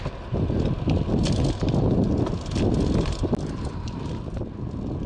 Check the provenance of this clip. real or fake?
real